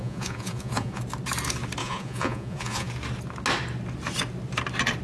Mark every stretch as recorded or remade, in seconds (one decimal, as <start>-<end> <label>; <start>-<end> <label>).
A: 0.0-1.0 remade; 1.0-1.8 recorded; 1.8-2.9 remade; 2.9-5.0 recorded